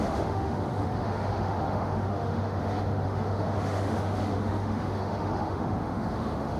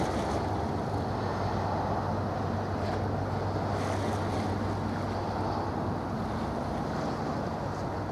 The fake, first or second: first